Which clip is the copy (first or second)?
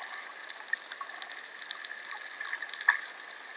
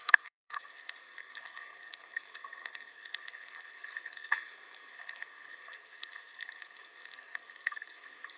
second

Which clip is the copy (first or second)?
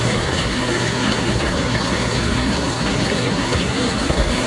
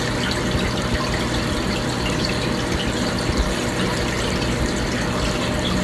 first